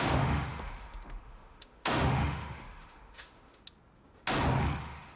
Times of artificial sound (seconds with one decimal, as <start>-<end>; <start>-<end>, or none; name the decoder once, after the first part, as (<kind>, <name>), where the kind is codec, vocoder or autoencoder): 0.0-3.6 (autoencoder, DAC-VAE); 4.8-5.2